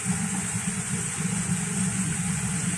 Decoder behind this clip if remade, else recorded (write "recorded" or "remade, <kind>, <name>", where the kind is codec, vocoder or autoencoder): remade, vocoder, Vocos